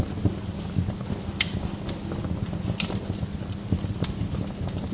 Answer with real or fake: real